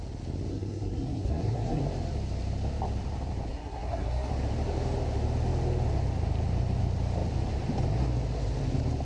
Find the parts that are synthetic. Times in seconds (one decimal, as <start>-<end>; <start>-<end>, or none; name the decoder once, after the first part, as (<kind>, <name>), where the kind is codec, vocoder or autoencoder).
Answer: 0.5-1.8 (codec, SNAC); 3.5-4.3